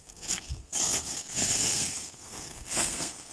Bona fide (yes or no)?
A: no